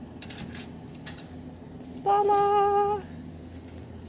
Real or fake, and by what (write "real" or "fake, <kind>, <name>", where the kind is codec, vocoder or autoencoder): real